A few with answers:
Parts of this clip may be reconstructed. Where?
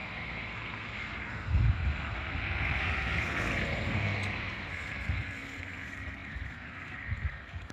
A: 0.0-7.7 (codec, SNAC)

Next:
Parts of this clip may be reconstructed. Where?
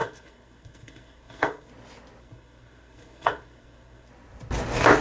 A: 0.0-1.7 (codec, SNAC); 2.2-4.1